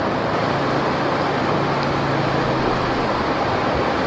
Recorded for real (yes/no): yes